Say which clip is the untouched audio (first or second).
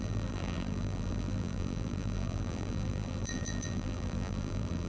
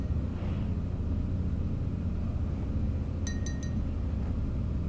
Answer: second